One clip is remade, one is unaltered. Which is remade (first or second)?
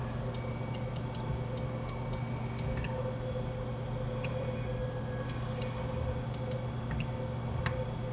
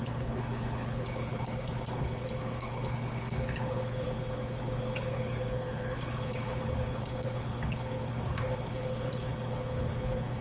second